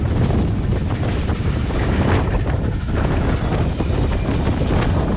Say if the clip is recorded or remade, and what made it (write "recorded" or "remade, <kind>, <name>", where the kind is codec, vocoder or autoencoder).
recorded